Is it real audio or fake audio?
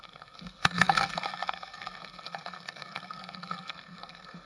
fake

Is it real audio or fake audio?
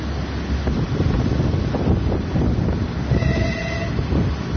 real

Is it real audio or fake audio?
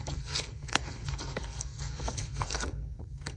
fake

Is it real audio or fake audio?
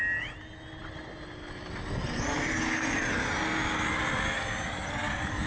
real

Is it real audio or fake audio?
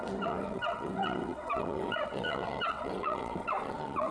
fake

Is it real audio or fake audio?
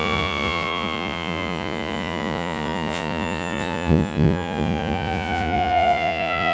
fake